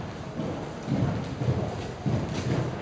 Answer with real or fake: real